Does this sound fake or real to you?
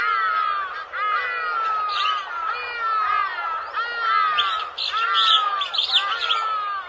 real